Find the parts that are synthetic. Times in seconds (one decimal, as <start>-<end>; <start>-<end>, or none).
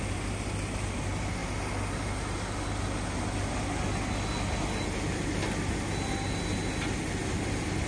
none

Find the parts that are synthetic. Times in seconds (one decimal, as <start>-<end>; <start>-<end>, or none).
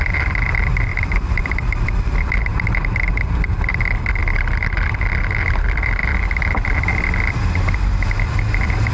0.0-2.5; 3.1-4.2; 5.5-8.9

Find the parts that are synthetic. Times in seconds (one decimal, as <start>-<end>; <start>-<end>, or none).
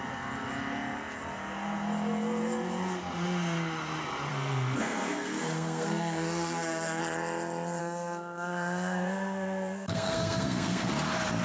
4.3-7.0; 7.8-10.9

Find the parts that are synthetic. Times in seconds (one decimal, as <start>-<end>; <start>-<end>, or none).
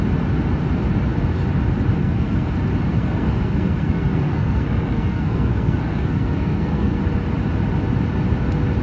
2.0-2.5; 2.9-7.0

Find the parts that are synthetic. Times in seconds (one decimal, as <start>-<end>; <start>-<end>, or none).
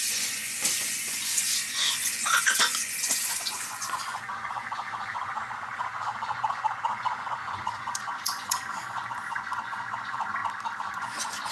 0.0-10.4; 10.9-11.5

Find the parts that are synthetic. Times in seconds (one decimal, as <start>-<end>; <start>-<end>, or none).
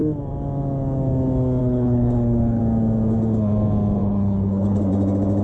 1.6-2.6; 4.0-4.8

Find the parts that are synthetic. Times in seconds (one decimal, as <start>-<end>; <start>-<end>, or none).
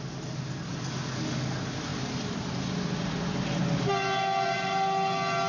none